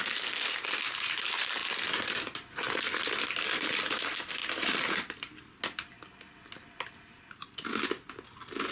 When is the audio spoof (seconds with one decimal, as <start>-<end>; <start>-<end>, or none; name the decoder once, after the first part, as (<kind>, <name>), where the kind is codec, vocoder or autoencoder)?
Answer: none